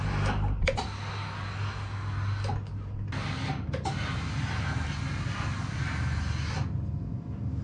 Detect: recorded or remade recorded